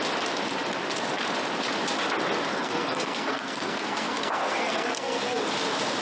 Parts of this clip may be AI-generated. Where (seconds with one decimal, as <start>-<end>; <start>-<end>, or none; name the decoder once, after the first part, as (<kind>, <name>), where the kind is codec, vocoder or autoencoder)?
2.5-5.4 (codec, SNAC)